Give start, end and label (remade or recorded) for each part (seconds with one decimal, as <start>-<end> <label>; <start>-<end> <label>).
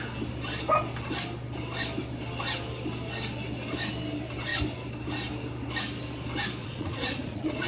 0.0-6.6 recorded; 6.6-7.7 remade